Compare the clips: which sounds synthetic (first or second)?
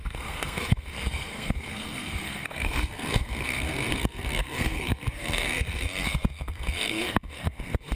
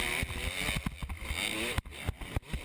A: first